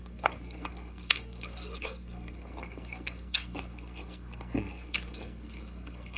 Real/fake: fake